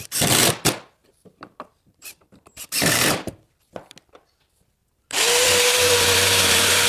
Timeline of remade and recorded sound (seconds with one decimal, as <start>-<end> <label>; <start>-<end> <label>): 0.0-1.0 recorded; 1.0-3.3 remade; 3.3-4.8 recorded; 4.8-6.9 remade